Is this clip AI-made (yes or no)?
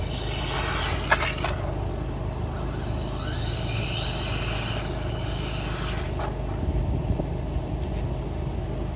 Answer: no